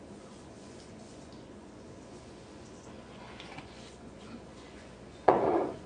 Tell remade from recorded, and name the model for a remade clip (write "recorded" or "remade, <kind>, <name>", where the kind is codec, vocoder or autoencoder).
remade, vocoder, Vocos